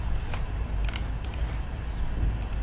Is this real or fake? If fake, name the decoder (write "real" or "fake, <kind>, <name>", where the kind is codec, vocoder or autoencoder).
real